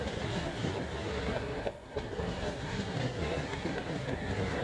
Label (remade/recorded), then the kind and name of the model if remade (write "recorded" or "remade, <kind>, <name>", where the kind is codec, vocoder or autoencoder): remade, codec, SNAC